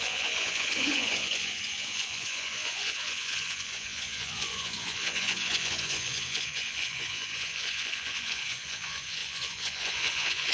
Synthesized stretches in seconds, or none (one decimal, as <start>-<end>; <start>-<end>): 0.0-10.5